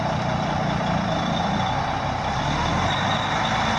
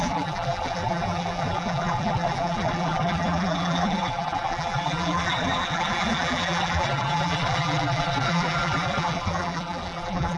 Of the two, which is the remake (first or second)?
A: second